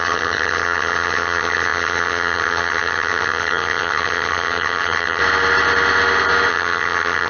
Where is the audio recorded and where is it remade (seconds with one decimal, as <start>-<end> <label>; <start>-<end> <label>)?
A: 0.0-5.2 remade; 5.2-6.5 recorded; 6.5-7.3 remade